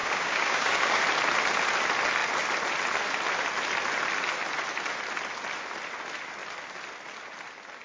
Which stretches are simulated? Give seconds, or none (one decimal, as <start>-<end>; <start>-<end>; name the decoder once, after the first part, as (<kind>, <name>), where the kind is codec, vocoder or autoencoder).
0.0-1.0 (codec, DAC)

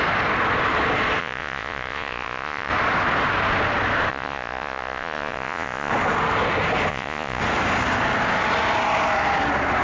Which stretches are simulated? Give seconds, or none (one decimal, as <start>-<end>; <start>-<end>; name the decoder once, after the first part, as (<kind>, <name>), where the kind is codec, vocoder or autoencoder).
1.2-2.7 (vocoder, Vocos); 4.1-5.9; 6.9-7.4

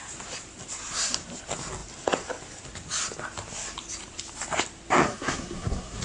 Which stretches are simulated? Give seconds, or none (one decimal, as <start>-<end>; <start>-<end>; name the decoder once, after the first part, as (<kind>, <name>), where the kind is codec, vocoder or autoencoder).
5.0-6.0 (codec, SNAC)